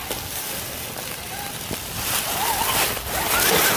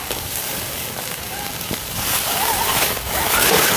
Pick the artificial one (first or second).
second